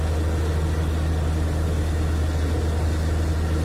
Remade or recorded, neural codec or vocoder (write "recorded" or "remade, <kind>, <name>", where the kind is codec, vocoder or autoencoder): recorded